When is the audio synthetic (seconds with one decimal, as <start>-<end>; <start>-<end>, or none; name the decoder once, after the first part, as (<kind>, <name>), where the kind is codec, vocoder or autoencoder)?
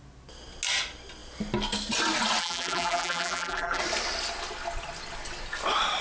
2.4-3.8 (vocoder, BigVGAN v2)